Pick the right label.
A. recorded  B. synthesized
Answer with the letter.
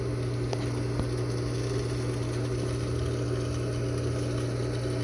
A